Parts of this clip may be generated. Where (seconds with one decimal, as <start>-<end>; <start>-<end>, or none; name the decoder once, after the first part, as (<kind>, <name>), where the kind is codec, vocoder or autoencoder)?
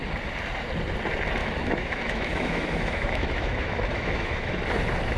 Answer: 1.4-4.5 (autoencoder, DAC-VAE)